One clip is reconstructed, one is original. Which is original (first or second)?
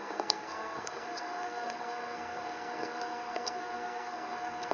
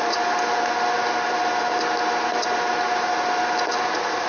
second